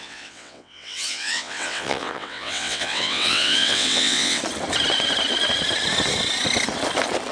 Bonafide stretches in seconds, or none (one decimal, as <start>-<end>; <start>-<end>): 4.4-7.3